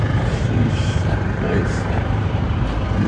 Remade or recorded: remade